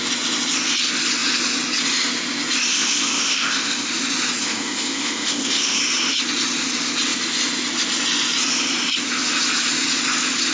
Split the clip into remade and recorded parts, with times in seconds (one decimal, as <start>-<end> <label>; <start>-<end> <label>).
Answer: 0.0-2.7 recorded; 2.7-3.9 remade; 3.9-4.4 recorded; 4.4-5.8 remade; 5.8-10.5 recorded